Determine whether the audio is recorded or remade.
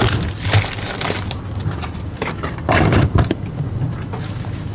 recorded